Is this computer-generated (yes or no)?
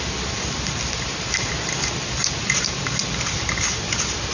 no